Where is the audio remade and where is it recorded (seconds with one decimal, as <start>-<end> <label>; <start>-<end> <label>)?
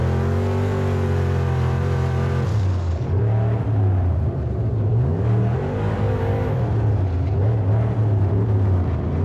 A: 0.0-2.5 recorded; 2.5-3.2 remade; 3.2-4.9 recorded; 4.9-6.2 remade; 6.2-9.2 recorded